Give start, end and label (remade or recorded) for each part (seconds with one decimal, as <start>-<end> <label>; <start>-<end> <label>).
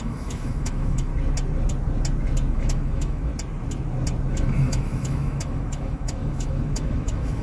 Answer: 0.0-1.1 remade; 1.1-2.5 recorded; 2.5-3.3 remade; 3.3-4.3 recorded; 4.3-7.4 remade